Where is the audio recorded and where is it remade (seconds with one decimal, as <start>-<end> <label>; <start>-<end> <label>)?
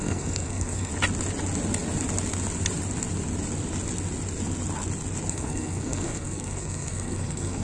0.0-0.9 remade; 0.9-5.3 recorded; 5.3-7.6 remade